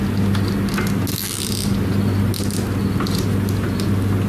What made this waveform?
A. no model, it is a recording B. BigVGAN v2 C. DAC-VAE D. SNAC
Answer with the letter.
A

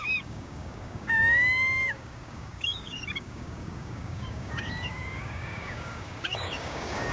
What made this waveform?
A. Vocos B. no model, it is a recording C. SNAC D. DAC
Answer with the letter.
D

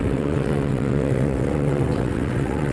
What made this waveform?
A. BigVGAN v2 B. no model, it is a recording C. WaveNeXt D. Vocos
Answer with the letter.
C